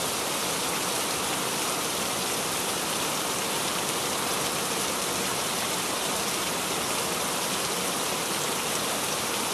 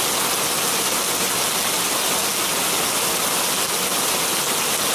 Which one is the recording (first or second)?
second